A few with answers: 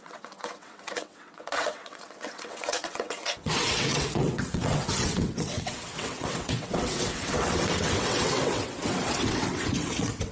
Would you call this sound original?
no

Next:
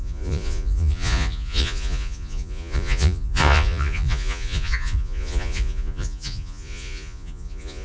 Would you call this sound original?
no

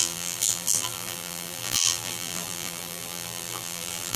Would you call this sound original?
no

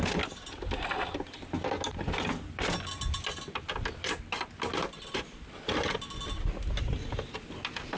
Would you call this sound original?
yes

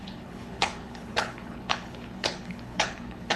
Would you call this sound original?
no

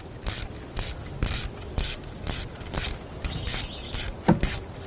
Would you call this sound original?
yes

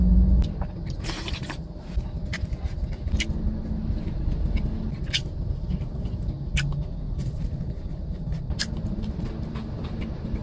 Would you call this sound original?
yes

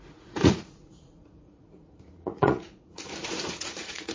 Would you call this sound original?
no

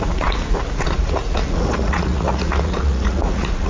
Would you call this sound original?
no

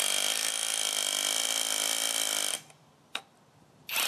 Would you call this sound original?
no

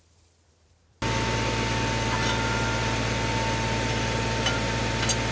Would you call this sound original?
yes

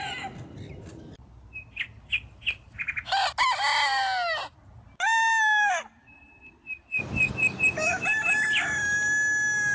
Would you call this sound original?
yes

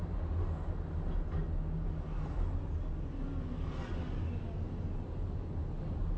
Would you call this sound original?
yes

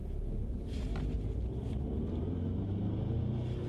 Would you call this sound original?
yes